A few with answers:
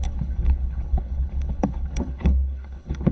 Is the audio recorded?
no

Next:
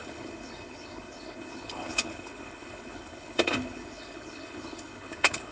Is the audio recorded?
no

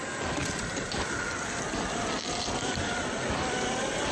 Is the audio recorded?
yes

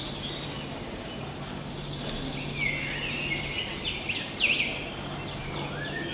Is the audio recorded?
yes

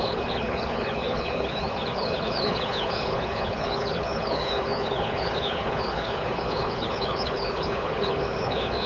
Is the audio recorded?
no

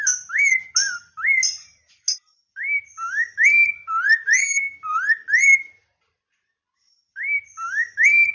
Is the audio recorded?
yes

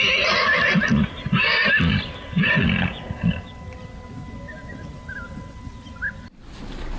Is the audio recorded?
yes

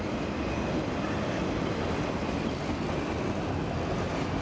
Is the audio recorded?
yes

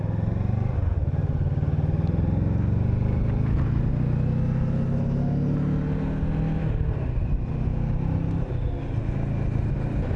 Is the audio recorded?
yes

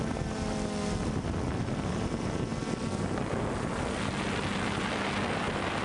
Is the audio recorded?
yes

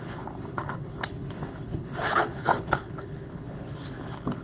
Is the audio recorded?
no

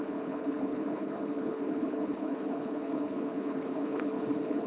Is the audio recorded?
no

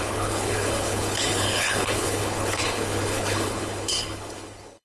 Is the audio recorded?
no